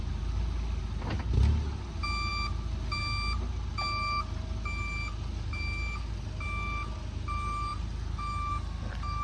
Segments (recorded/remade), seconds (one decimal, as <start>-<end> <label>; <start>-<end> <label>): 0.0-9.2 recorded